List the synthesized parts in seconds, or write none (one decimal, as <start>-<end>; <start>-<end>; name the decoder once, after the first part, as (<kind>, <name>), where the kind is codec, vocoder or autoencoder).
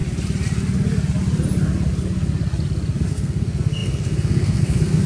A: 3.1-5.1 (codec, SNAC)